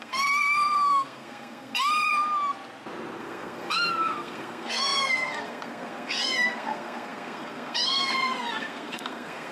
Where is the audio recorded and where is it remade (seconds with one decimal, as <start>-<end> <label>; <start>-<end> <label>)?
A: 0.0-1.9 remade; 1.9-3.2 recorded; 3.2-9.5 remade